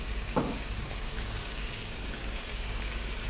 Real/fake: fake